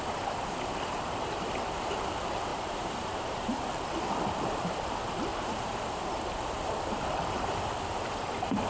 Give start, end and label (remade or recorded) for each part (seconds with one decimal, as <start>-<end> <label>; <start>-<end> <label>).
0.0-2.5 recorded; 2.5-3.7 remade; 3.7-5.3 recorded; 5.3-6.0 remade; 6.0-8.7 recorded